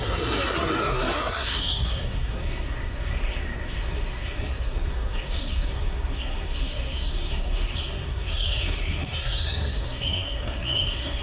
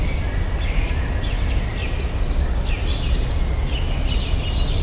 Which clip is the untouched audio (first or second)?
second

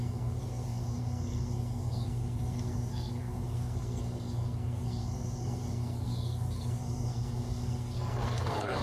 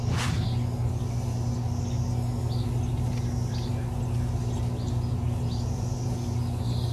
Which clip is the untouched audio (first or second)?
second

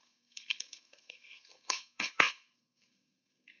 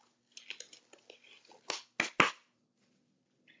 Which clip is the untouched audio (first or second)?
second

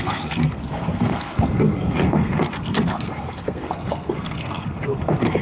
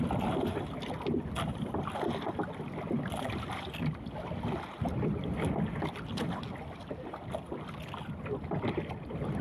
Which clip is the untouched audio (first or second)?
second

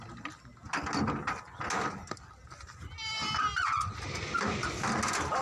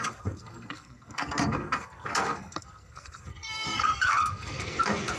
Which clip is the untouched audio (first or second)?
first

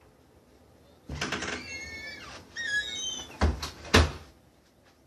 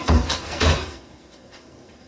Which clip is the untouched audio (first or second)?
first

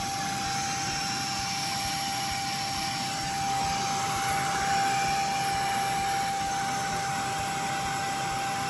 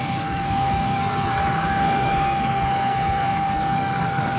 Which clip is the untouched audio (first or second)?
first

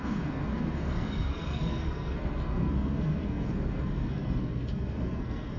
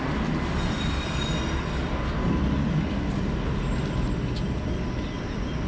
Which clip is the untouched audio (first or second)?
second